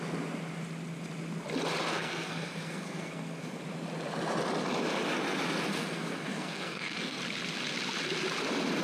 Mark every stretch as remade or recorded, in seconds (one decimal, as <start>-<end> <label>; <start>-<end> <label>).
0.0-1.9 recorded; 1.9-3.6 remade; 3.6-5.7 recorded; 5.7-7.2 remade; 7.2-8.8 recorded